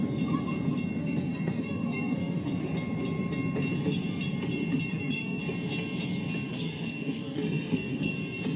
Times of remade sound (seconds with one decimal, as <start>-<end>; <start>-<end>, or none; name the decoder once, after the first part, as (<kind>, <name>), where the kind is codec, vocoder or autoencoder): 1.0-2.6 (codec, SNAC); 4.9-5.4; 6.5-8.1